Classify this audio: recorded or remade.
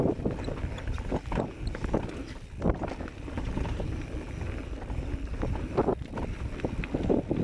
recorded